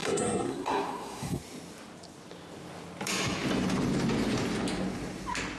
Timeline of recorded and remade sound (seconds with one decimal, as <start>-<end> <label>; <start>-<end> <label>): 0.0-1.4 remade; 1.4-5.6 recorded